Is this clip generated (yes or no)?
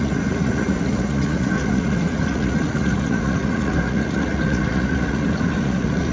yes